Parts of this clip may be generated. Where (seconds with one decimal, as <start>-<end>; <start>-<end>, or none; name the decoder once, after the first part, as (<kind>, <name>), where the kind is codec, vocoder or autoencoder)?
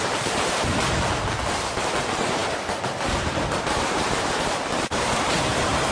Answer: 0.0-0.7 (vocoder, BigVGAN v2); 2.0-2.4; 3.6-5.9